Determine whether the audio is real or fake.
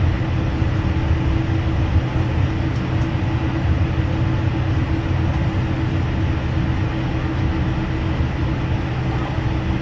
real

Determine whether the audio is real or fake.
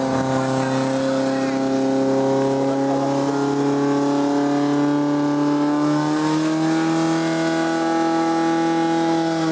real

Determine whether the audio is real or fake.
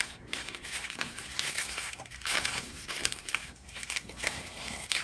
fake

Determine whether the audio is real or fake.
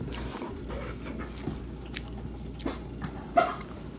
real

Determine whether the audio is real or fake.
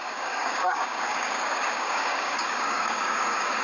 fake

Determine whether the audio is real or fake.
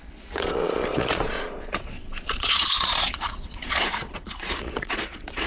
fake